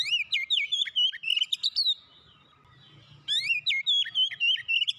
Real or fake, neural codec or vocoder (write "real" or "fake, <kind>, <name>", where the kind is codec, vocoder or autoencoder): real